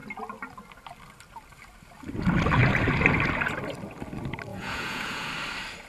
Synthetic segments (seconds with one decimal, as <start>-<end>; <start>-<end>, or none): 4.5-5.3